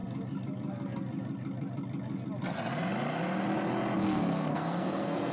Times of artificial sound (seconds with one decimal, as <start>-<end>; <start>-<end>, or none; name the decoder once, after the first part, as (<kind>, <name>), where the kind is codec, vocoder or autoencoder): 4.0-5.3 (codec, SNAC)